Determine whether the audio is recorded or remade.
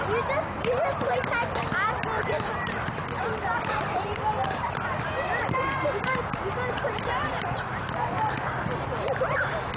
recorded